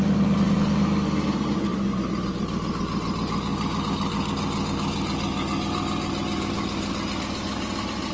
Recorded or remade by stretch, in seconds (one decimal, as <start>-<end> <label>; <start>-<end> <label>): 0.0-8.1 recorded